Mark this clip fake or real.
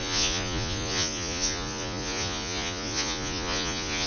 fake